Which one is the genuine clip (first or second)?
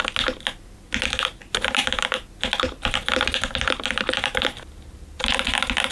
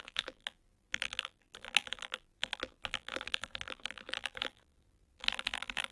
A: first